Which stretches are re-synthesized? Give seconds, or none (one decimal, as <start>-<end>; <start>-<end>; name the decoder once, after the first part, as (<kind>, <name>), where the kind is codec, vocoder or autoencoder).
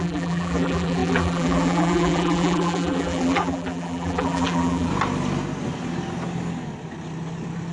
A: 0.0-4.9 (vocoder, BigVGAN v2)